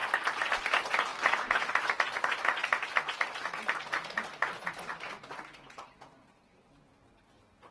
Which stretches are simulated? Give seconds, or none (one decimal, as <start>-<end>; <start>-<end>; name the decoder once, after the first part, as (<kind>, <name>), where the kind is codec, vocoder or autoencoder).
none